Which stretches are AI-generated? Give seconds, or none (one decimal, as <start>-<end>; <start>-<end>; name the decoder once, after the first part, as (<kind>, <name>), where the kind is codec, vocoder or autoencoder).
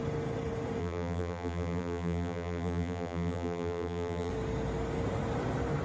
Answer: 0.8-4.3 (vocoder, BigVGAN v2)